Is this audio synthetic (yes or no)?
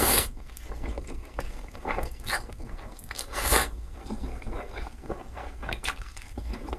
yes